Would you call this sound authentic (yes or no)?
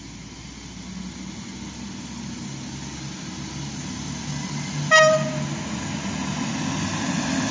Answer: yes